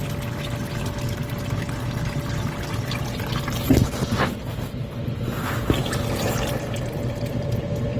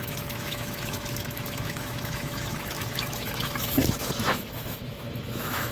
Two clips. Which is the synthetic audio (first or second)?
second